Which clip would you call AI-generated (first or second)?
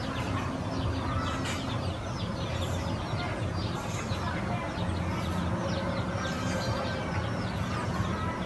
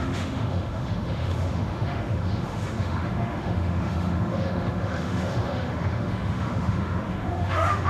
second